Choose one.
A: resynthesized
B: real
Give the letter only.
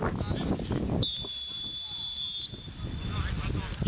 B